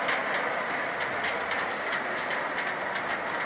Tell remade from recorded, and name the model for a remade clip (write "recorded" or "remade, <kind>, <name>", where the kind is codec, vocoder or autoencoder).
recorded